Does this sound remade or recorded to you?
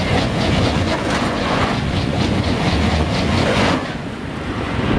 remade